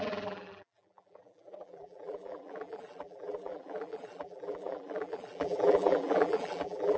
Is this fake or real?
fake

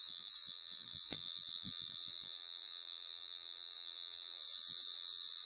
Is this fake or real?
fake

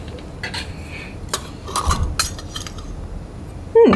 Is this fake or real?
real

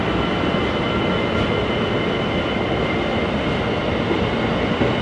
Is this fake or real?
real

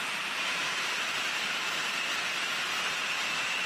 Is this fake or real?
fake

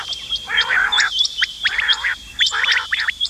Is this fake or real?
fake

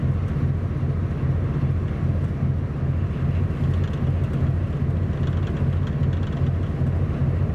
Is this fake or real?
real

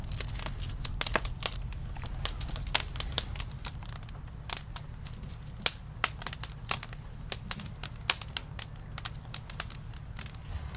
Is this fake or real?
real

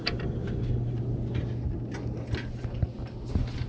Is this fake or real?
real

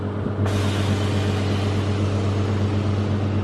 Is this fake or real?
real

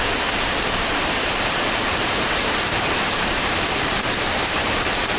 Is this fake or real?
fake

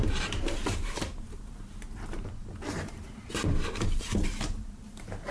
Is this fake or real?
fake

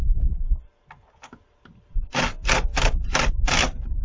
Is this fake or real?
real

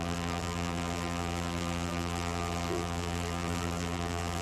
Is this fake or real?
fake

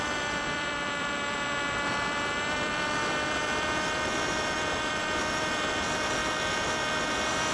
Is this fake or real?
fake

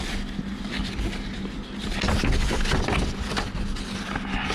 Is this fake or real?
real